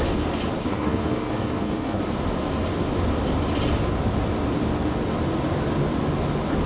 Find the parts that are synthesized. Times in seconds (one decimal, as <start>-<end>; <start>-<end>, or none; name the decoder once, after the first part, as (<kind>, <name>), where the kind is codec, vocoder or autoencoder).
0.6-2.0 (codec, SNAC)